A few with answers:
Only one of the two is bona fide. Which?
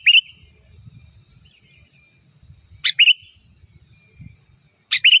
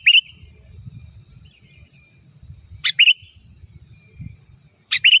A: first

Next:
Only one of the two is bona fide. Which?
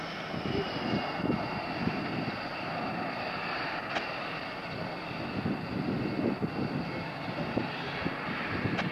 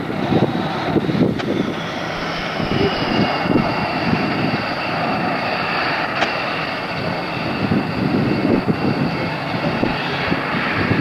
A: first